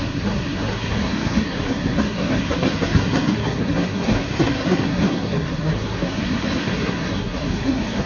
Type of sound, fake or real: fake